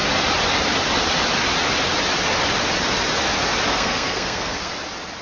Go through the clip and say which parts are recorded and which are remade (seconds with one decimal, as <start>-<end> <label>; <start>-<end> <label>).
0.0-3.7 recorded; 3.7-4.7 remade; 4.7-5.2 recorded